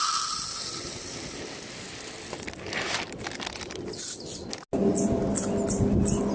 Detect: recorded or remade recorded